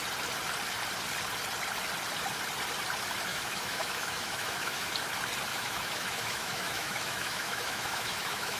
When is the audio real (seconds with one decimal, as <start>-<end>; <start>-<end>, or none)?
0.0-3.3; 4.9-5.5